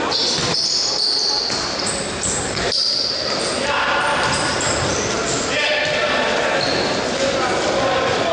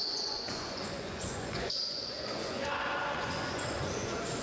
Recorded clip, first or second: first